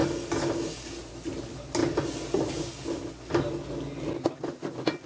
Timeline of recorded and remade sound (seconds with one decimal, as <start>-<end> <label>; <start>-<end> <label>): 0.0-5.1 recorded